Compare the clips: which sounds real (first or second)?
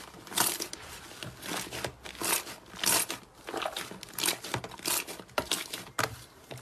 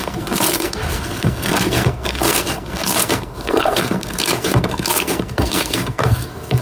first